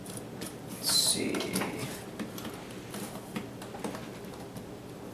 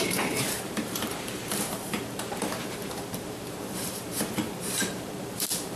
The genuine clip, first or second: first